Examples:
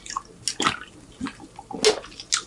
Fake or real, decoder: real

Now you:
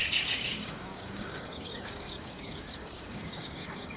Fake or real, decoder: fake, codec, DAC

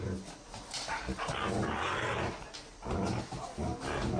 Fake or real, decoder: real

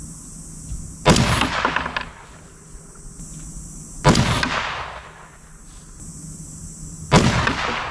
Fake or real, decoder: real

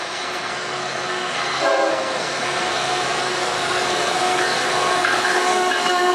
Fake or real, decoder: fake, codec, SNAC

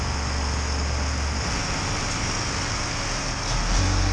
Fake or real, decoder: real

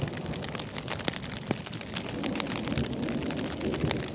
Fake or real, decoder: real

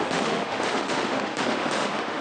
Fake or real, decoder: fake, autoencoder, DAC-VAE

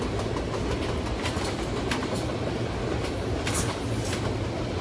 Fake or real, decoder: real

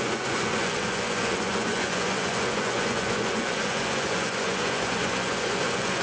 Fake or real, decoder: fake, vocoder, Vocos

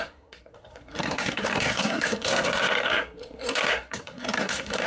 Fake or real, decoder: fake, codec, SNAC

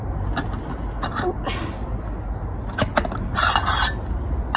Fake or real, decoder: real